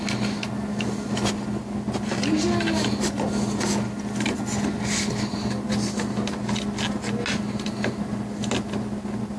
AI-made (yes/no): no